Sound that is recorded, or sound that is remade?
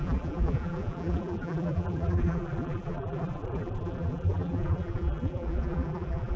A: remade